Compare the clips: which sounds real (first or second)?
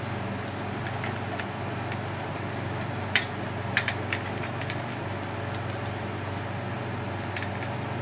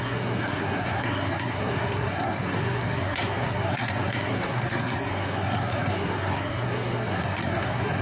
first